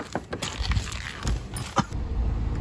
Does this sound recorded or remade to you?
recorded